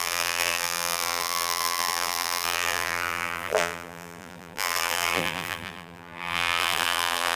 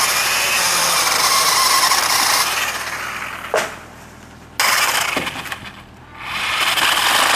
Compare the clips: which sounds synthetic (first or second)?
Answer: first